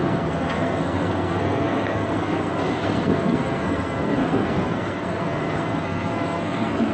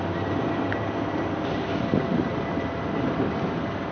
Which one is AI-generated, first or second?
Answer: first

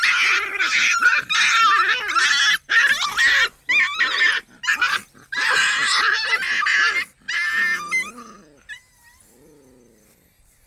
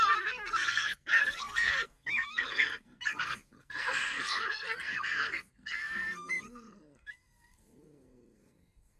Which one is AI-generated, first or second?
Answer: second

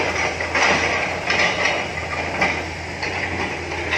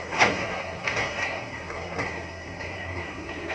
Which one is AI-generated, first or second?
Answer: second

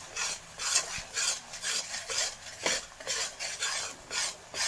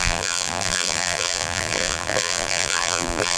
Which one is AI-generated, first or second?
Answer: second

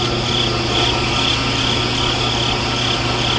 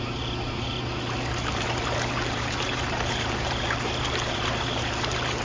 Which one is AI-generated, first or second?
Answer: second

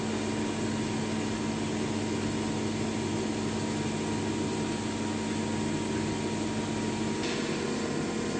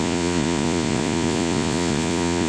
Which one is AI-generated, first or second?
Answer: second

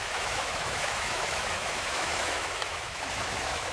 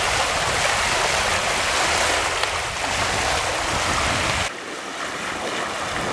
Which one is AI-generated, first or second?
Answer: first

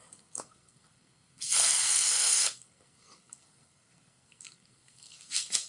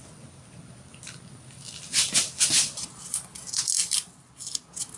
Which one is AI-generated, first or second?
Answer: first